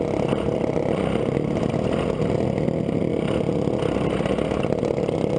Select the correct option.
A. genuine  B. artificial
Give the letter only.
A